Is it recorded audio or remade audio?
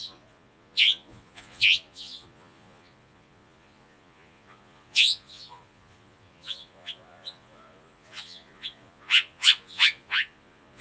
remade